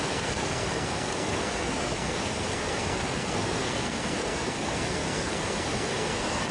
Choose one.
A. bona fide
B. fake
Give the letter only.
B